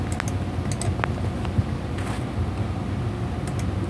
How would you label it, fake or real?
real